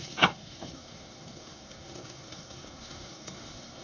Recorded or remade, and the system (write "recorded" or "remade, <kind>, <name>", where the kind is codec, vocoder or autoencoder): remade, codec, SNAC